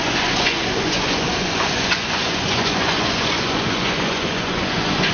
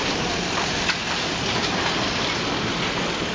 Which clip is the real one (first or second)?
second